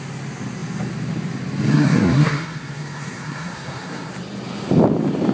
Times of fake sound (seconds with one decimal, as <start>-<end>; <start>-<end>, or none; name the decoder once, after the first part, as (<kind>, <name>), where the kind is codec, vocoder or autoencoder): 1.7-4.1 (codec, SNAC)